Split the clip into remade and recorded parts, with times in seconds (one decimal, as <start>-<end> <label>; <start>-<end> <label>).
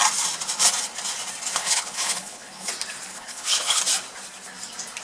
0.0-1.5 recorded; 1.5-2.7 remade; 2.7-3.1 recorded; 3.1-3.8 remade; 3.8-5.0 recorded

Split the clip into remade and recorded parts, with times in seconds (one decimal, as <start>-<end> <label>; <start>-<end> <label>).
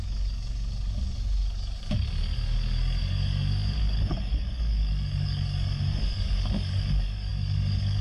0.0-8.0 remade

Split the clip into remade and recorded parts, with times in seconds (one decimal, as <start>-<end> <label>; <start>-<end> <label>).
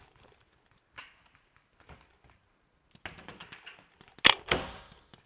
0.0-5.3 recorded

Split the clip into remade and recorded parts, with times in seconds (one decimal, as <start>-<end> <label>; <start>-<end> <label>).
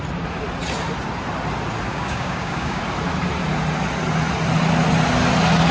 0.0-1.9 recorded; 1.9-2.8 remade; 2.8-5.7 recorded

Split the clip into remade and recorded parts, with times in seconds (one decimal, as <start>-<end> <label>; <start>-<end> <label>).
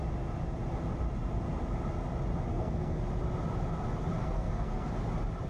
0.0-2.5 recorded; 2.5-3.0 remade; 3.0-4.2 recorded; 4.2-4.9 remade; 4.9-5.5 recorded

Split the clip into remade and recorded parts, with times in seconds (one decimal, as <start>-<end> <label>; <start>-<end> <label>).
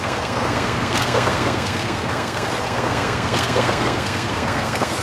0.0-5.0 remade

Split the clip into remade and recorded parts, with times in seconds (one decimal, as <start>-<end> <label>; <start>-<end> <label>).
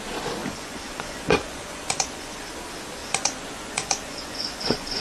0.0-0.4 recorded; 0.4-2.5 remade; 2.5-3.0 recorded; 3.0-5.0 remade